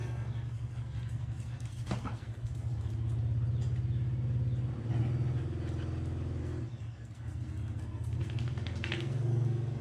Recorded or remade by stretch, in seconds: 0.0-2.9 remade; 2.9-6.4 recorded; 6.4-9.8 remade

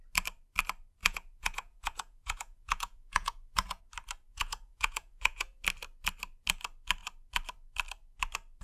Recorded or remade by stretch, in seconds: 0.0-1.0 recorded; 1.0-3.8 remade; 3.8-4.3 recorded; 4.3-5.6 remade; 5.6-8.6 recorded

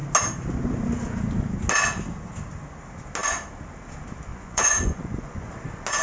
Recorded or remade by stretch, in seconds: 0.0-4.3 recorded; 4.3-5.5 remade; 5.5-6.0 recorded

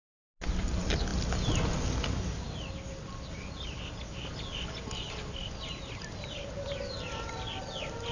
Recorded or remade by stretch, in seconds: 0.0-8.1 recorded